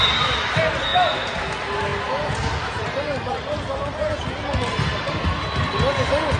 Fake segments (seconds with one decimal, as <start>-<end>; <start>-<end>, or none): none

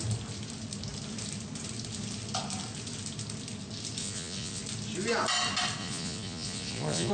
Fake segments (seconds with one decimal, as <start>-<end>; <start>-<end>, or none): 4.0-4.6; 5.8-7.1